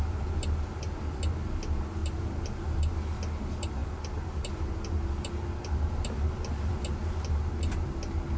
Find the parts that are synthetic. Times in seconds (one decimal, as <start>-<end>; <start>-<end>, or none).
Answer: none